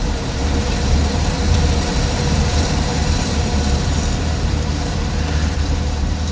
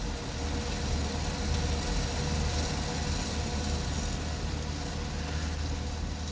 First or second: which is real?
second